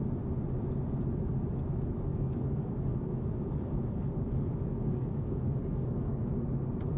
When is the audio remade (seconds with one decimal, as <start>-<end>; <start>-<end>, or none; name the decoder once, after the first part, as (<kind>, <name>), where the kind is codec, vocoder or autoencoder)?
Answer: 2.1-6.3 (codec, DAC)